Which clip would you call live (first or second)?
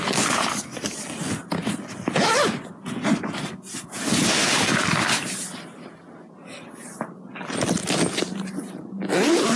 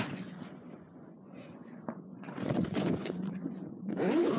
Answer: first